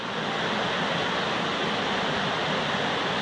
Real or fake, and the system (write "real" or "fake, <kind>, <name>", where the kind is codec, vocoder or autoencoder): real